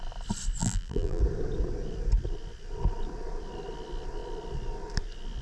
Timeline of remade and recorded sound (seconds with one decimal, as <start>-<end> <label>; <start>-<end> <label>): 0.0-0.6 recorded; 0.6-1.2 remade; 1.2-5.4 recorded